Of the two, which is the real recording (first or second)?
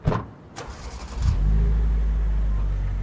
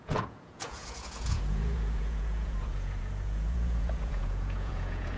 first